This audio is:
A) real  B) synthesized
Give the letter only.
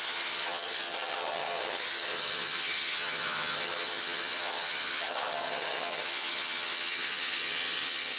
B